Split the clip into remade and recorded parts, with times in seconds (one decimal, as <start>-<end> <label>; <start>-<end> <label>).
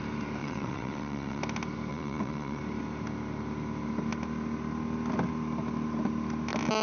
0.0-0.4 recorded; 0.4-1.4 remade; 1.4-1.9 recorded; 1.9-2.6 remade; 2.6-6.8 recorded